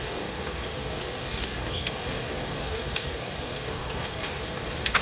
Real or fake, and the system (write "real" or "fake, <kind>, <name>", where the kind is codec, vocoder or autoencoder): fake, codec, DAC